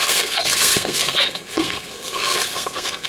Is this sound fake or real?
fake